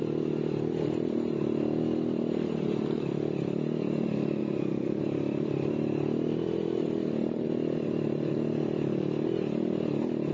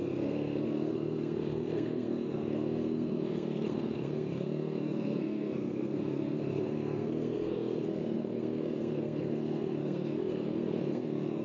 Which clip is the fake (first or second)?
second